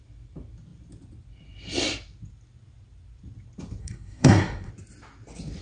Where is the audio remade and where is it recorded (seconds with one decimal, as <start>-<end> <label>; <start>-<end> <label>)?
0.0-3.8 recorded; 3.8-4.7 remade; 4.7-5.6 recorded